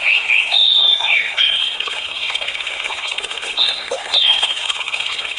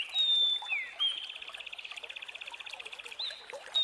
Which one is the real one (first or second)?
second